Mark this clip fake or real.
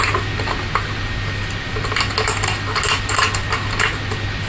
real